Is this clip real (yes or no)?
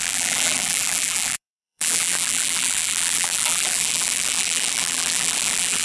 no